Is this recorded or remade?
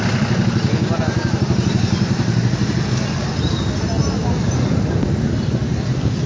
recorded